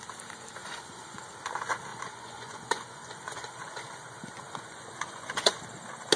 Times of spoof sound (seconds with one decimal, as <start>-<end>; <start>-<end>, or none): 0.6-1.2; 1.9-5.6